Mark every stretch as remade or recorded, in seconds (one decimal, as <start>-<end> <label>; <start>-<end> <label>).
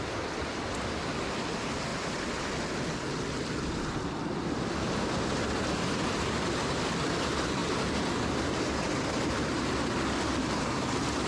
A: 0.0-11.3 recorded